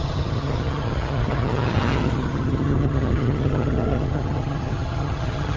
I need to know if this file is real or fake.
fake